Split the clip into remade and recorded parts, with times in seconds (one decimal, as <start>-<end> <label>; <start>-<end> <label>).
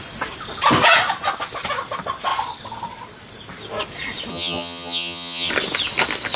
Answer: 0.0-4.3 recorded; 4.3-5.5 remade; 5.5-6.4 recorded